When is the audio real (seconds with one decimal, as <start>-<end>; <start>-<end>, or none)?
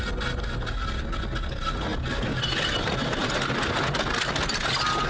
0.0-5.1